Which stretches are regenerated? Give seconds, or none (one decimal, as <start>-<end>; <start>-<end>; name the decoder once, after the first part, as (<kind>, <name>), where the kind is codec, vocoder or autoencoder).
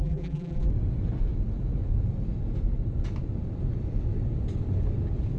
0.0-0.7 (vocoder, BigVGAN v2)